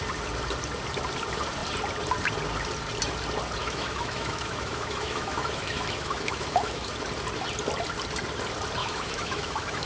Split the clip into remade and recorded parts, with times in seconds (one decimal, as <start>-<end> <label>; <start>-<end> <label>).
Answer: 0.0-3.6 recorded; 3.6-6.9 remade; 6.9-8.8 recorded; 8.8-9.9 remade